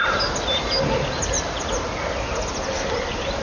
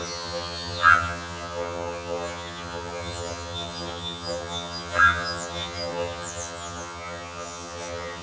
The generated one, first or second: second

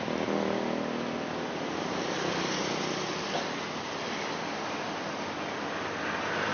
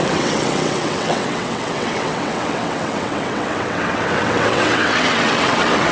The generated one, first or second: second